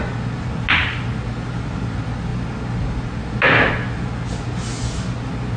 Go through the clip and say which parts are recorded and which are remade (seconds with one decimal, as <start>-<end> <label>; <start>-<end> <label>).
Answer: 0.0-5.6 recorded